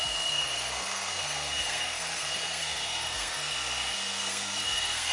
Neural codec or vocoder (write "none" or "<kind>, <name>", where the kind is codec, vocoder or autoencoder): codec, SNAC